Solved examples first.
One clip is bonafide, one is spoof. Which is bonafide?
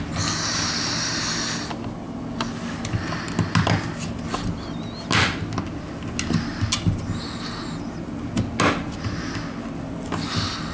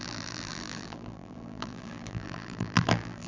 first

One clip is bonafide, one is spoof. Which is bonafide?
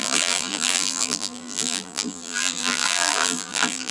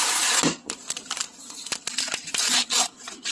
second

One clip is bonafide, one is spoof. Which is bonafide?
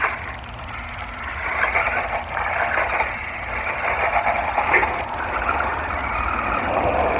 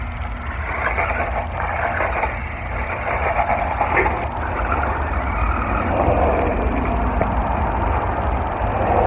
second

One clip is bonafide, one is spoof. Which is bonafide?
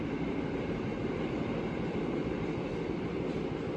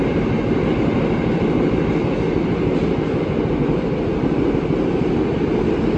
second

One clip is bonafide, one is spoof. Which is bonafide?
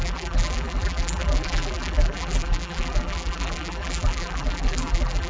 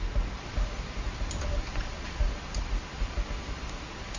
second